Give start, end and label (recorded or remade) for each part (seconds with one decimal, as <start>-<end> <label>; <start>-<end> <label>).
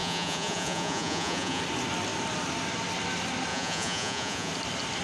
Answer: 0.0-1.6 remade; 1.6-3.5 recorded; 3.5-4.5 remade; 4.5-5.0 recorded